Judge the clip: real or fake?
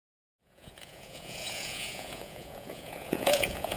fake